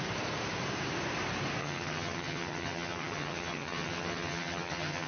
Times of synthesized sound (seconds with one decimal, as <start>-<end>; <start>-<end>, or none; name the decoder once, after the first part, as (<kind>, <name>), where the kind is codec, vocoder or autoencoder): 1.6-5.1 (vocoder, HiFi-GAN)